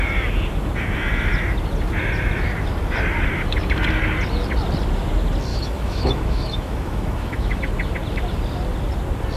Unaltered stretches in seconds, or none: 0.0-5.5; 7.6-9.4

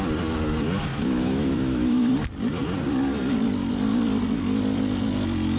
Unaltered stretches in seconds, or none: 0.0-0.9; 2.1-5.6

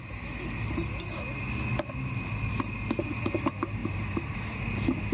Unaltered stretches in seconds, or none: 0.0-1.7; 2.5-3.8; 4.6-5.1

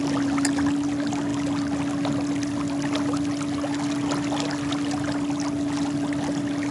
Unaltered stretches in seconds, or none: 0.0-6.7

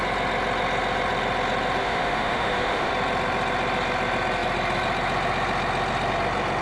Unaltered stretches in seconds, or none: 0.0-1.8; 2.9-6.6

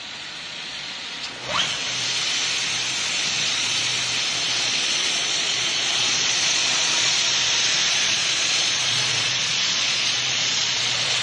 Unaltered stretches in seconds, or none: 1.8-3.1; 3.9-4.6; 7.2-7.9

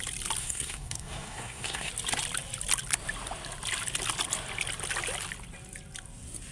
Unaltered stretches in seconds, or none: 0.0-0.4; 1.9-6.5

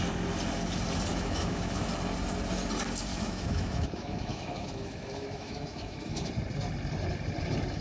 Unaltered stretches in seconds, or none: 0.0-1.1; 1.9-3.1; 6.3-7.8